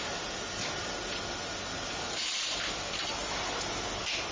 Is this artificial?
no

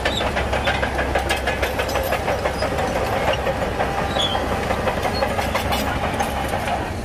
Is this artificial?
no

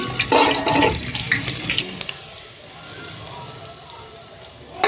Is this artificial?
no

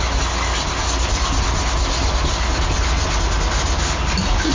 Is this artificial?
no